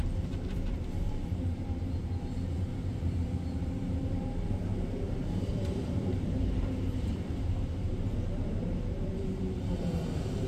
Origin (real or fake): fake